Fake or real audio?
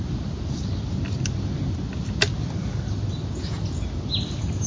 real